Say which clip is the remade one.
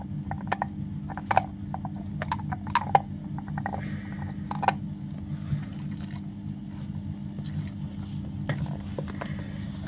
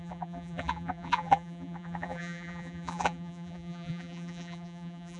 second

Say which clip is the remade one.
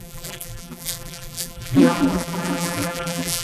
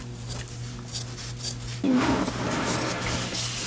first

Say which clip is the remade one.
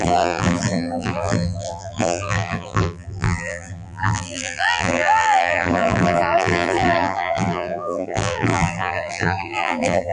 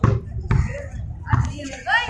first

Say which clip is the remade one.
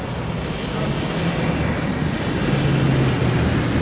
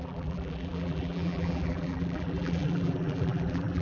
second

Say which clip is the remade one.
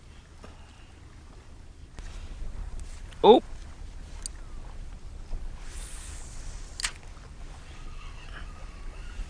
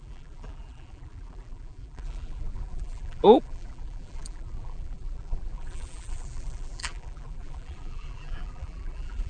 second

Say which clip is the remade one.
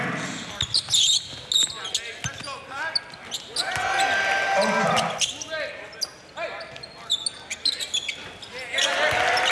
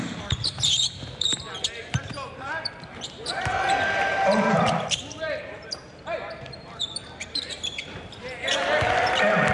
second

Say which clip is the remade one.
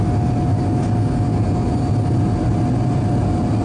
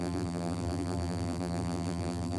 second